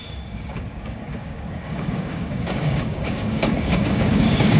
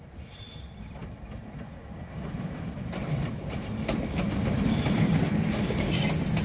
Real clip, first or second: second